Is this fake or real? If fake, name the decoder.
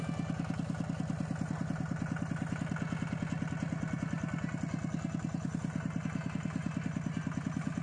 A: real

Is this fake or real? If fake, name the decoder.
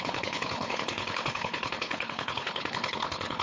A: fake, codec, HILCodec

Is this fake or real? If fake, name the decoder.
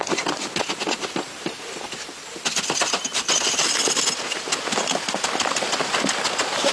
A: real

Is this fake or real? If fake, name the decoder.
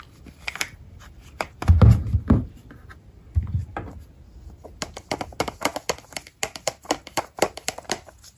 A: real